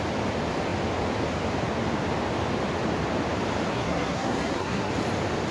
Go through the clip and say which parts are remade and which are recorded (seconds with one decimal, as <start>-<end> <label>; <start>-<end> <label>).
0.0-3.7 recorded; 3.7-4.9 remade; 4.9-5.5 recorded